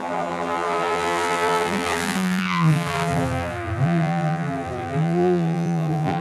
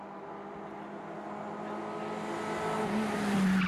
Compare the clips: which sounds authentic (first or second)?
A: second